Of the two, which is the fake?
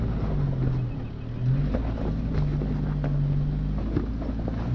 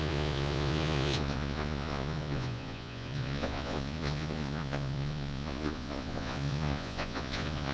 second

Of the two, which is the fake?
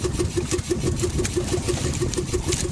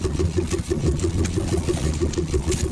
second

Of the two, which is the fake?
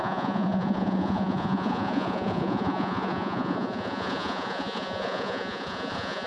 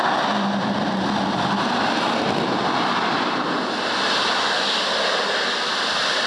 first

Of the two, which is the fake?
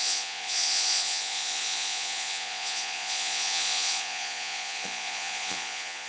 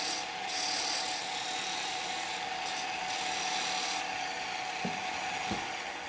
first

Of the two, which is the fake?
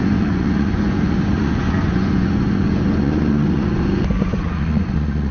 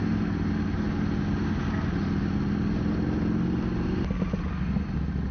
first